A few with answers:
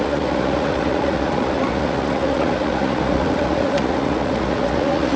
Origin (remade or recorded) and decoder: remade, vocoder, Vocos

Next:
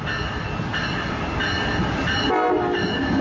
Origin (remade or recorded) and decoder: recorded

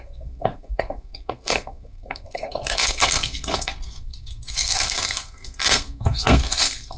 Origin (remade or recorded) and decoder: remade, codec, SNAC